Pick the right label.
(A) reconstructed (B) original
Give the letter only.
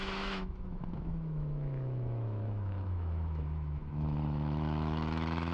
A